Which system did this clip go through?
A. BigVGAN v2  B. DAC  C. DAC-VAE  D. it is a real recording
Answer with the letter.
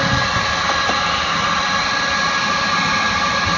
D